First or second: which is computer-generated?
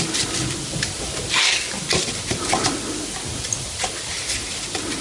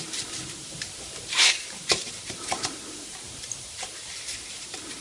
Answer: second